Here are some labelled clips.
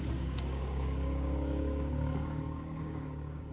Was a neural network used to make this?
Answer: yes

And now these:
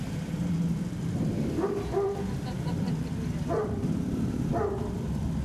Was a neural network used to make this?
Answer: yes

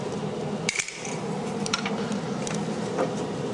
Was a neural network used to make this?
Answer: yes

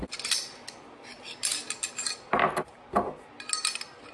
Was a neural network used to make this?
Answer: no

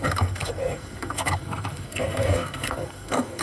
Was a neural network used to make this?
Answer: yes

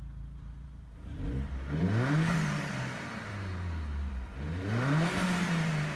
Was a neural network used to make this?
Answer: yes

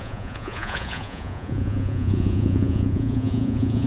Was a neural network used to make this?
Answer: yes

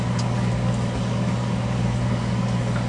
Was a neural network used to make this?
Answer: yes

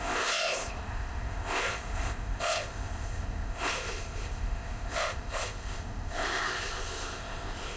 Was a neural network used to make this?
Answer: yes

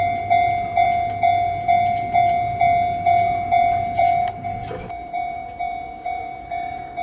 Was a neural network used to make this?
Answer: yes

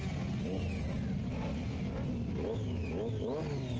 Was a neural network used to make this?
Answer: no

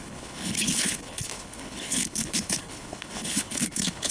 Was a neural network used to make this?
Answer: yes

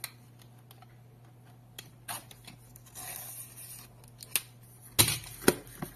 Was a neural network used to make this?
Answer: no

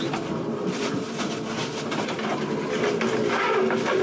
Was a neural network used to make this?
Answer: no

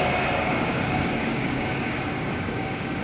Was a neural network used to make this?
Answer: yes